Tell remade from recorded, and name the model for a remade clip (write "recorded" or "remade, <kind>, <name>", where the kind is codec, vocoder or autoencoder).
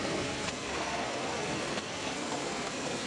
remade, codec, SNAC